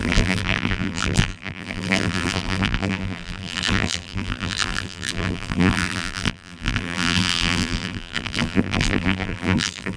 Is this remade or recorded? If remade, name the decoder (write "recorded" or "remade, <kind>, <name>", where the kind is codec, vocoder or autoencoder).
remade, vocoder, BigVGAN v2